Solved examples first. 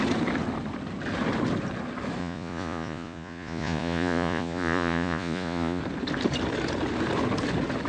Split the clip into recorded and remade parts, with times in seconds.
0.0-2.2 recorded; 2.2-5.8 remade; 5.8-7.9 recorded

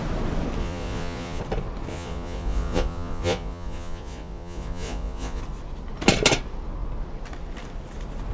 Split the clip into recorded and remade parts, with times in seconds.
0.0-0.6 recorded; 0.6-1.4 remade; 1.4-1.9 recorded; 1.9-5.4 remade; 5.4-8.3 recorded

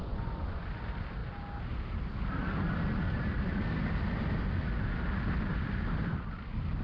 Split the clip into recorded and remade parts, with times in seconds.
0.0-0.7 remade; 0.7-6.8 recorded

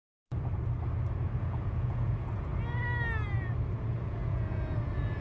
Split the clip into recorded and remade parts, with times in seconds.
0.0-1.4 recorded; 1.4-2.5 remade; 2.5-3.8 recorded; 3.8-5.2 remade

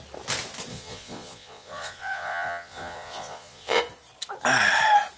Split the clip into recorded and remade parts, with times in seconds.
0.0-0.7 recorded; 0.7-3.8 remade; 3.8-5.2 recorded

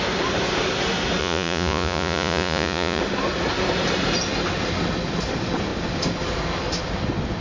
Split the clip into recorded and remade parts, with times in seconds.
0.0-1.2 recorded; 1.2-3.0 remade; 3.0-7.4 recorded

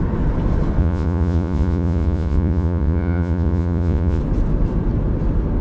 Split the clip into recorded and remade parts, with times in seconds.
0.0-0.8 recorded; 0.8-4.2 remade; 4.2-5.6 recorded